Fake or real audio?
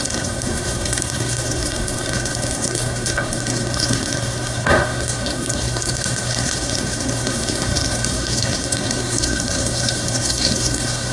fake